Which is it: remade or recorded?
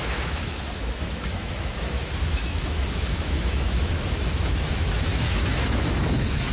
remade